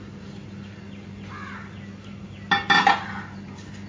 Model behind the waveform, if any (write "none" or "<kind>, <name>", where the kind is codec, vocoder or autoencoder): none